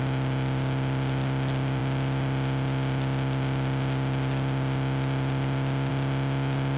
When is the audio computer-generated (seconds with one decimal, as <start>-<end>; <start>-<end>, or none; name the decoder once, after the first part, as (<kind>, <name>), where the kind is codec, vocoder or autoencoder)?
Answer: none